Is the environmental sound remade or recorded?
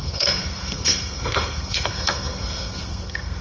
remade